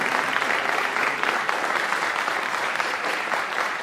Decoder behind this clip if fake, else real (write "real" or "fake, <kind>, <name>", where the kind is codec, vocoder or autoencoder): fake, vocoder, BigVGAN v2